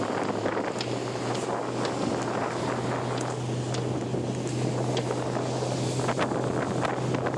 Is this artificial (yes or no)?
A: no